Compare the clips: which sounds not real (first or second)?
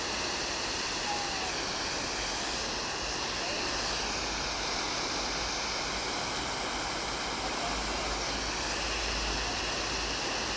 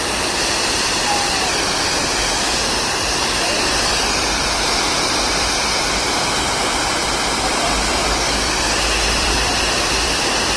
second